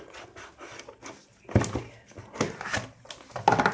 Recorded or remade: recorded